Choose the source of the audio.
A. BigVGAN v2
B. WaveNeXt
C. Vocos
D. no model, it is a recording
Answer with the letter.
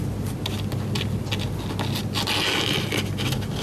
D